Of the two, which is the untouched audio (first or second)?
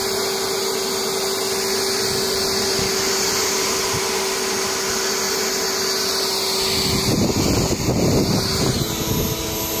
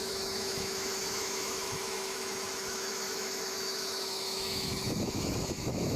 first